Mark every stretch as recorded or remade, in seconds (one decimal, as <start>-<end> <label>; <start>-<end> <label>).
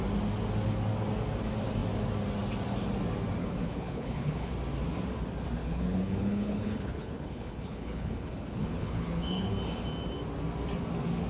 0.0-3.4 recorded; 3.4-4.5 remade; 4.5-5.6 recorded; 5.6-9.5 remade; 9.5-11.3 recorded